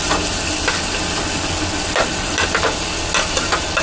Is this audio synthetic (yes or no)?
no